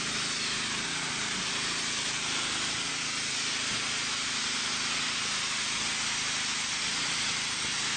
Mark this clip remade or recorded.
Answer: recorded